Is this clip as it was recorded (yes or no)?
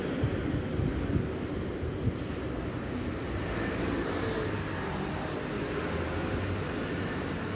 yes